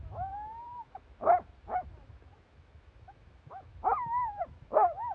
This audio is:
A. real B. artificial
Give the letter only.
B